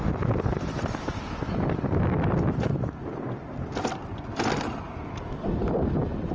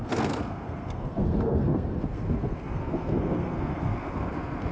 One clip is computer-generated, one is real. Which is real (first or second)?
first